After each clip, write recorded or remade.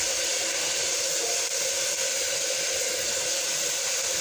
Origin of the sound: recorded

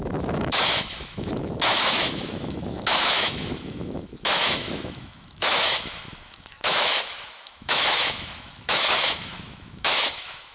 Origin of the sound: remade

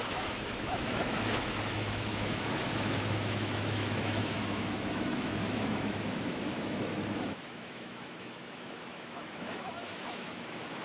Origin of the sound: remade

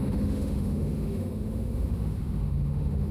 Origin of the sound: remade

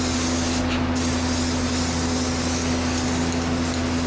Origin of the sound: recorded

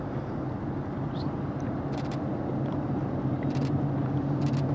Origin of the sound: recorded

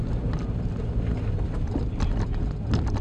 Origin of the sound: recorded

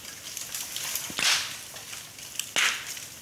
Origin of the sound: recorded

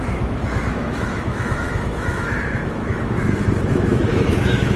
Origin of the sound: remade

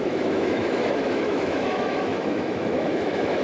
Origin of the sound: remade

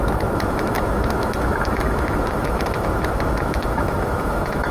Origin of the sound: remade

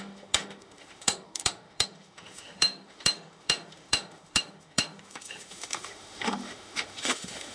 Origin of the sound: remade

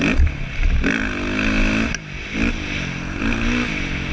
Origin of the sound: recorded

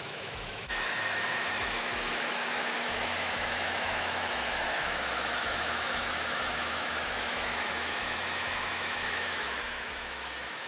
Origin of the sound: remade